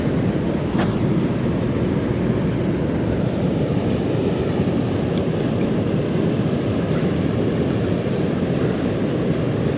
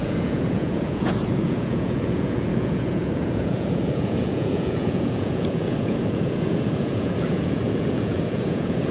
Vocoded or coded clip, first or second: second